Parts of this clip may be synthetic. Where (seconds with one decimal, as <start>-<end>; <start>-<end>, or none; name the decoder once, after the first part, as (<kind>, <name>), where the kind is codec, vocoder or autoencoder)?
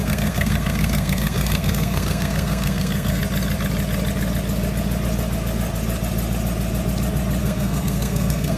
0.0-3.2 (codec, SNAC); 7.4-8.6